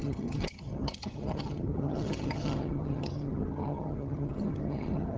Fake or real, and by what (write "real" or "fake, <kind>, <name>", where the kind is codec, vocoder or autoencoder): fake, vocoder, HiFi-GAN